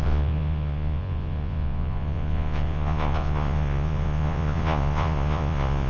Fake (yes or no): yes